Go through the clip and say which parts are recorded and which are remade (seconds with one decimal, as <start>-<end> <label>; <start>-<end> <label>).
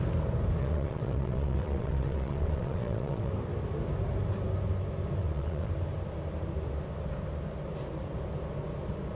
0.0-0.6 recorded; 0.6-3.3 remade; 3.3-5.2 recorded; 5.2-5.7 remade; 5.7-9.2 recorded